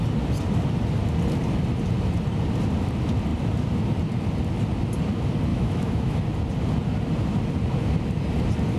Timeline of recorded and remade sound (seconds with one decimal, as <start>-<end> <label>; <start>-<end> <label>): 0.0-5.5 recorded; 5.5-6.2 remade; 6.2-8.8 recorded